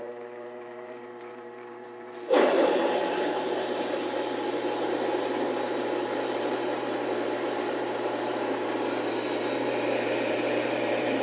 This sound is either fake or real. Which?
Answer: fake